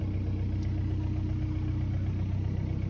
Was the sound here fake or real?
real